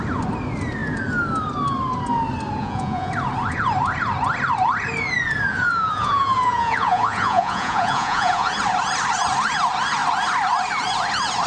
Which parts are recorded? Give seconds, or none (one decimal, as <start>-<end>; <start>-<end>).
0.0-2.6; 3.1-5.5; 8.5-11.5